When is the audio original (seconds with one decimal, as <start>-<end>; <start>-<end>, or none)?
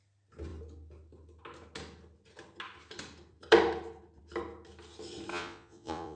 0.0-5.3